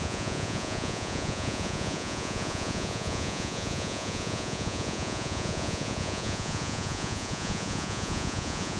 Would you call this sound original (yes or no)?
no